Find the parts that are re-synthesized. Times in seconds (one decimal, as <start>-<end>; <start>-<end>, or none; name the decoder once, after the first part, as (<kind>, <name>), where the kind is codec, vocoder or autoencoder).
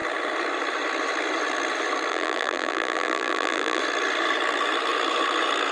2.1-3.8 (vocoder, BigVGAN v2)